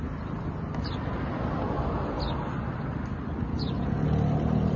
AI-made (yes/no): no